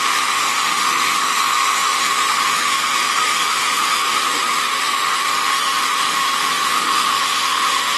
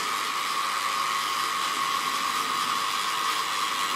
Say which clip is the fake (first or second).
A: first